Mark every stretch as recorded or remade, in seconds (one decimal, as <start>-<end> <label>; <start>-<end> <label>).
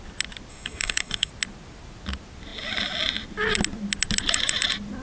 0.0-0.5 recorded; 0.5-1.3 remade; 1.3-5.0 recorded